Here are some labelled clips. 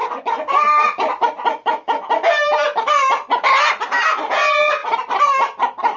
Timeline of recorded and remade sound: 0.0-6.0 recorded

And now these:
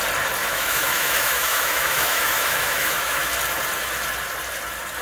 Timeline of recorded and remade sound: 0.0-0.4 recorded; 0.4-3.3 remade; 3.3-5.0 recorded

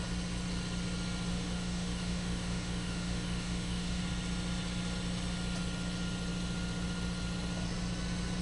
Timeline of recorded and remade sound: 0.0-1.3 recorded; 1.3-4.0 remade; 4.0-8.4 recorded

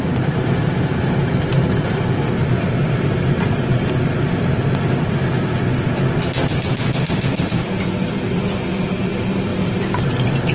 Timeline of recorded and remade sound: 0.0-6.8 recorded; 6.8-7.5 remade; 7.5-10.5 recorded

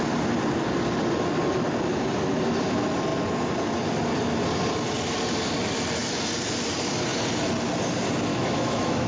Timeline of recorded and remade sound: 0.0-8.3 recorded; 8.3-9.1 remade

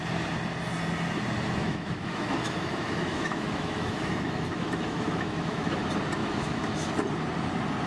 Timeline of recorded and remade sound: 0.0-1.6 recorded; 1.6-5.8 remade; 5.8-6.2 recorded; 6.2-6.9 remade; 6.9-7.9 recorded